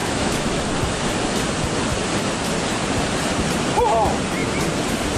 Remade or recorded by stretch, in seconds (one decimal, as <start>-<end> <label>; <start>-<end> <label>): 0.0-0.6 remade; 0.6-5.2 recorded